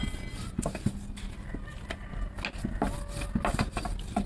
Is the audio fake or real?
real